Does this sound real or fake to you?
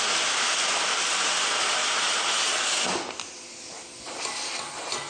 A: real